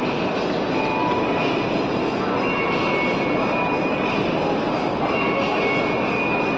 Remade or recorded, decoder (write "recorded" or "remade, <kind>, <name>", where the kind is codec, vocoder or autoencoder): recorded